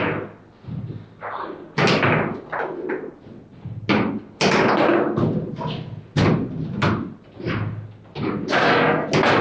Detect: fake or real real